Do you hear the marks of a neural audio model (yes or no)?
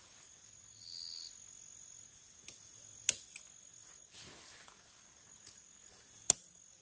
no